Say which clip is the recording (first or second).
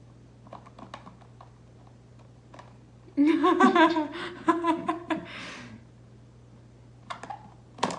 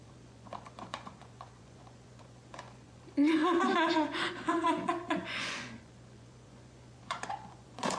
first